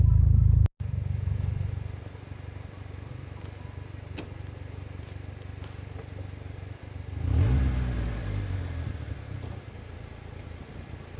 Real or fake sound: real